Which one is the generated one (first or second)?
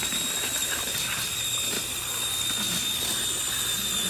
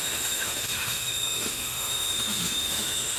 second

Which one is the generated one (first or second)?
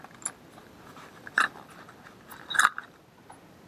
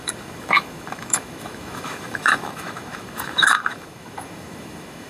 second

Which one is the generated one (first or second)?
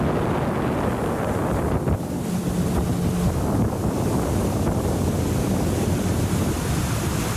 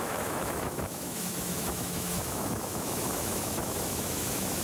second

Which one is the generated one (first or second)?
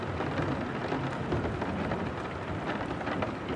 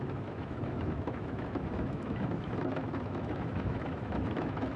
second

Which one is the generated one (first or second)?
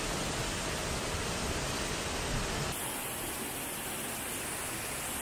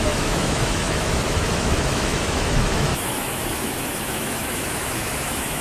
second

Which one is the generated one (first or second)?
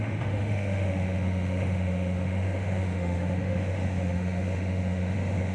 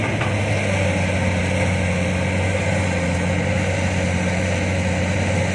first